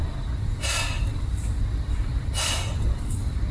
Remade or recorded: recorded